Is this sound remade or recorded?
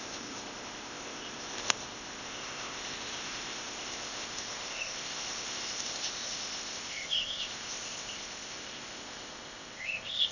remade